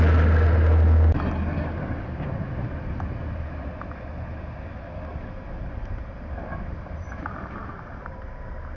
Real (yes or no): yes